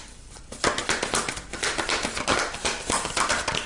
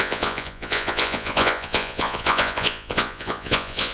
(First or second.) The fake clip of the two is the second